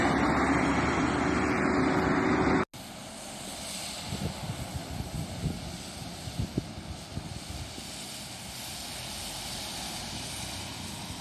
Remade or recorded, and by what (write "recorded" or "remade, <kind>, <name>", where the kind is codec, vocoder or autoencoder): recorded